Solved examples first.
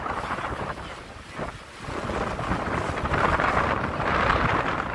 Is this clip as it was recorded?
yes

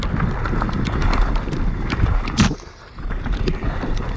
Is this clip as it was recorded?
yes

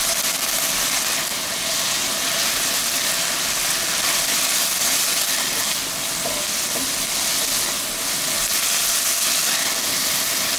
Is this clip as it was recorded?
yes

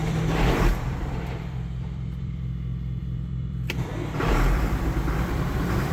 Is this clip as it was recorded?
no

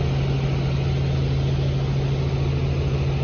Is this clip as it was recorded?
yes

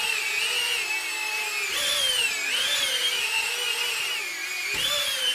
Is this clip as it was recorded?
yes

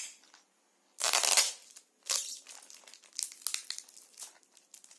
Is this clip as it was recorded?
yes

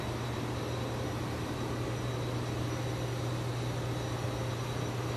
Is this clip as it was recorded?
yes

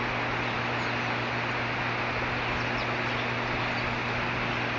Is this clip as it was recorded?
yes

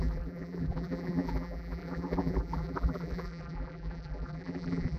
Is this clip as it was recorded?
no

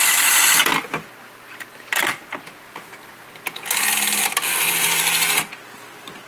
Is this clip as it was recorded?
yes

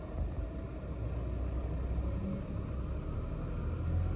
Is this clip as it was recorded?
yes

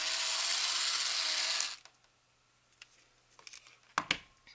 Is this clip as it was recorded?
yes